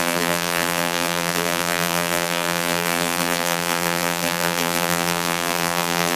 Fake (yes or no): yes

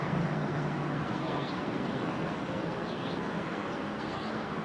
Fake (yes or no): yes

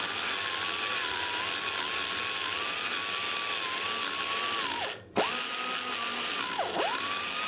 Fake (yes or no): no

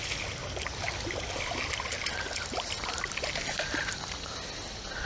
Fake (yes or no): no